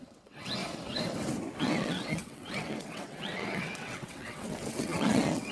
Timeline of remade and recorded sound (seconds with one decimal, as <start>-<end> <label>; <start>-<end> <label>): 0.0-0.6 remade; 0.6-1.6 recorded; 1.6-5.5 remade